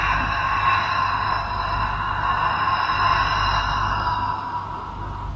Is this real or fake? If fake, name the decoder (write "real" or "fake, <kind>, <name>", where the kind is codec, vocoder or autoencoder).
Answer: real